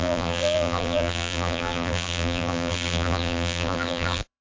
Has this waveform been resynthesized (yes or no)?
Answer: yes